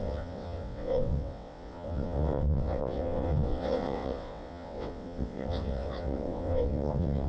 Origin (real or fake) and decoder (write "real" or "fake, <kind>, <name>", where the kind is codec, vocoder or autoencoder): fake, vocoder, WaveNeXt